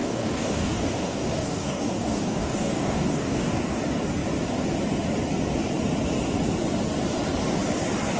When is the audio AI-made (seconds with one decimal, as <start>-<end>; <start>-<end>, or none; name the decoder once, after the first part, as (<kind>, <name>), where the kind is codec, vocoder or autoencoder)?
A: 0.0-3.8 (codec, DAC)